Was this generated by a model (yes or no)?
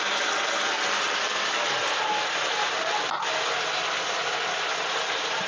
no